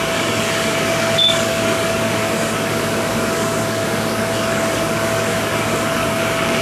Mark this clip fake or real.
fake